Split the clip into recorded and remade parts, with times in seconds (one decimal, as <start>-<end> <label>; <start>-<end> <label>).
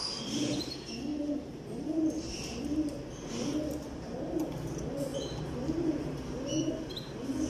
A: 0.0-1.1 recorded; 1.1-1.8 remade; 1.8-5.1 recorded; 5.1-6.7 remade; 6.7-7.5 recorded